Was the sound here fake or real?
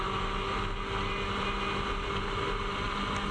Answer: real